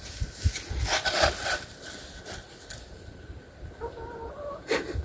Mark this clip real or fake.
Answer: real